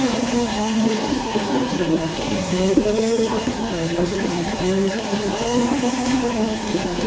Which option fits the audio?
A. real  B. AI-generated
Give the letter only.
B